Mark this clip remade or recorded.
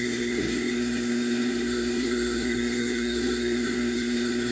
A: remade